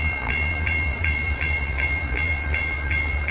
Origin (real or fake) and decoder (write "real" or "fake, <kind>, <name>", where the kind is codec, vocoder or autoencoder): fake, vocoder, Vocos